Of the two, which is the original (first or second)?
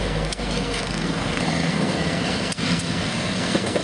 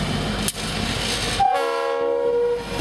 second